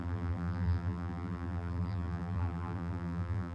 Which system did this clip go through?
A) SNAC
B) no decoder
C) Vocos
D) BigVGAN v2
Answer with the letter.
D